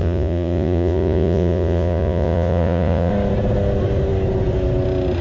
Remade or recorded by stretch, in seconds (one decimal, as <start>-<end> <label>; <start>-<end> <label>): 0.0-3.1 remade; 3.1-5.2 recorded